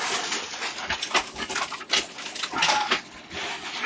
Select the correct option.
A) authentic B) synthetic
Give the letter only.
A